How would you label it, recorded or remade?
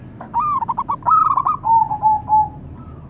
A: recorded